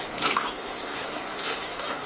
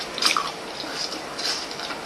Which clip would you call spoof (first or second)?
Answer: first